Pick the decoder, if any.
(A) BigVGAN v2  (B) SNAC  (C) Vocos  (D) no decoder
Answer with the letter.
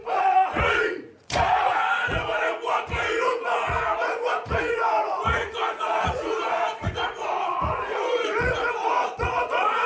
C